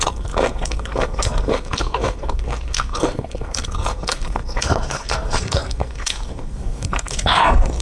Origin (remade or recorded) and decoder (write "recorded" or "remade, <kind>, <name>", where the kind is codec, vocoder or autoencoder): remade, codec, SNAC